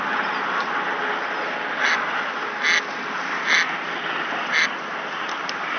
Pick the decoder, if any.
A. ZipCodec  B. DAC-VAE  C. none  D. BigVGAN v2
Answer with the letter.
C